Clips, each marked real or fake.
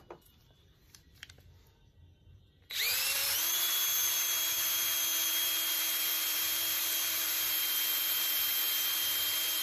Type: fake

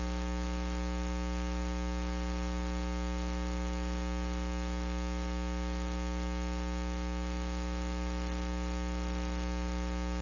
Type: real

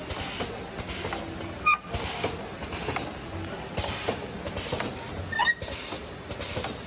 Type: real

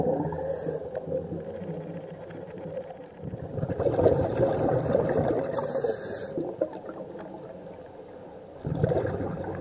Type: real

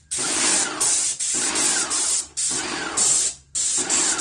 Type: real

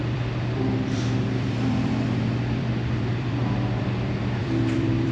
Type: fake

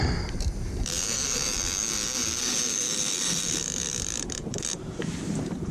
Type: fake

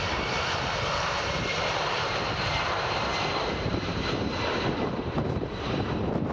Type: fake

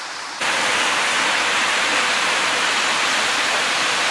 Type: fake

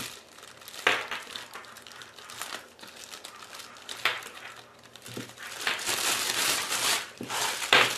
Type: fake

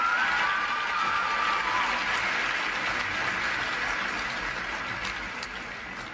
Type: real